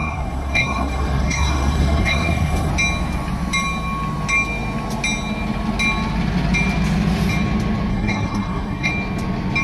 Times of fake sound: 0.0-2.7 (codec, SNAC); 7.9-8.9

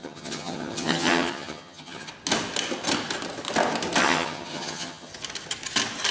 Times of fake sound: 0.0-2.1 (vocoder, HiFi-GAN); 4.0-5.1

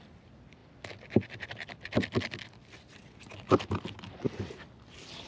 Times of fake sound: none

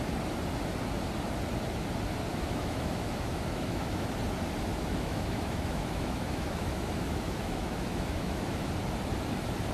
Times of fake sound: 2.3-4.1 (autoencoder, DAC-VAE); 4.7-8.7

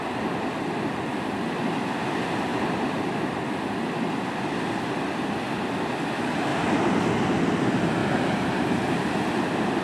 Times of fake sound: 2.5-3.5 (vocoder, BigVGAN v2); 6.5-7.1; 8.0-9.3

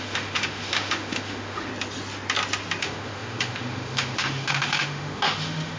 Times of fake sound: 0.0-1.7 (autoencoder, DAC-VAE); 2.8-5.8

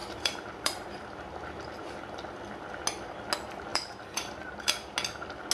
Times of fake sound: 0.0-1.0 (vocoder, BigVGAN v2); 3.7-4.7